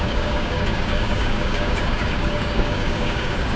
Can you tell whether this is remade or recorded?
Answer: remade